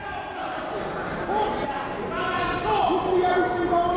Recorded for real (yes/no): yes